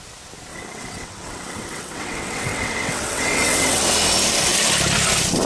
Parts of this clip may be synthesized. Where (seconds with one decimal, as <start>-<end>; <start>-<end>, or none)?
0.5-3.8

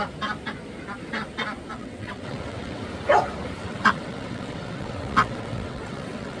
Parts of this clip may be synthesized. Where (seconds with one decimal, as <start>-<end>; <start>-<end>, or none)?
1.7-2.8; 3.6-6.4